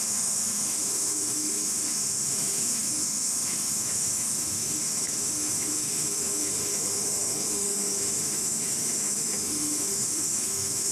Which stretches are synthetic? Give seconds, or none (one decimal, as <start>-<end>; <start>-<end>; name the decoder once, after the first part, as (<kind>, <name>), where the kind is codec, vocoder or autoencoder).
0.0-10.9 (autoencoder, DAC-VAE)